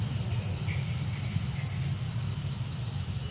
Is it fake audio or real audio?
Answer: real